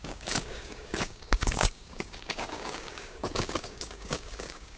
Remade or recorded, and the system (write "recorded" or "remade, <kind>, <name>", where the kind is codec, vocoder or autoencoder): remade, codec, DAC